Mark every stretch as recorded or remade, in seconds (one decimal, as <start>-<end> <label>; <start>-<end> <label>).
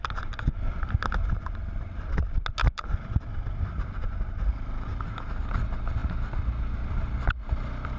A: 0.0-2.6 recorded; 2.6-4.0 remade; 4.0-8.0 recorded